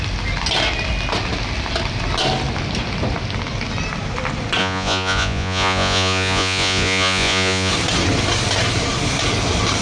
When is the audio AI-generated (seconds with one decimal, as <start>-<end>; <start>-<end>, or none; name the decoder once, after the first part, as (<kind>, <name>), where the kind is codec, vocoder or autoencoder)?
4.6-7.7 (vocoder, Vocos)